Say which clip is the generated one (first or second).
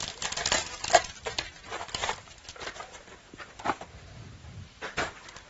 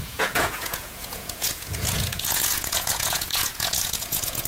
second